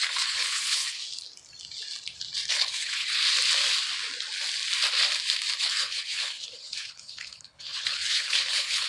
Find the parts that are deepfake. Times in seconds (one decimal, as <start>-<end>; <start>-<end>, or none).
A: 0.0-1.0; 2.5-3.2; 5.6-8.9

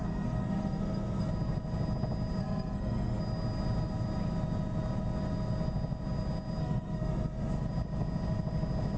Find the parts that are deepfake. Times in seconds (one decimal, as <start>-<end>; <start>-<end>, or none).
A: 0.0-1.3; 2.4-3.2; 6.6-7.5

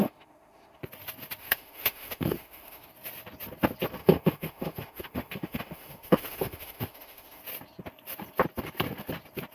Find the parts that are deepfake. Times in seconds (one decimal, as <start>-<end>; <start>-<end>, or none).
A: 0.0-0.8; 1.4-2.9; 4.0-7.4

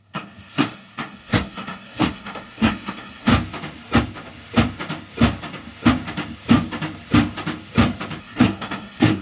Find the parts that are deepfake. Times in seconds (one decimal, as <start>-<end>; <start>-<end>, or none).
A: 0.0-3.3; 8.2-9.2